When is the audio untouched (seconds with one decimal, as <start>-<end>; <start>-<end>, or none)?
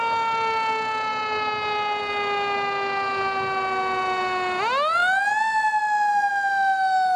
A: 0.0-7.2